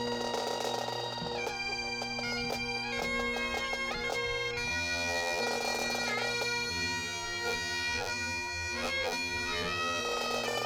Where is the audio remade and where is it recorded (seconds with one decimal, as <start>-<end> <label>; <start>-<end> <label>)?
0.0-4.7 recorded; 4.7-5.4 remade; 5.4-6.7 recorded; 6.7-10.0 remade; 10.0-10.7 recorded